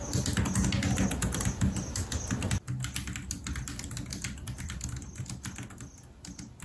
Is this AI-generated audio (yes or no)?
no